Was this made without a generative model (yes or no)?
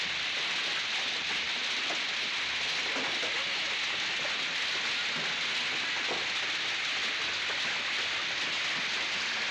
yes